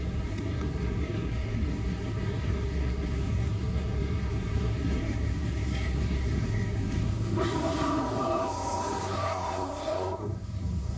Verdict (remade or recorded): remade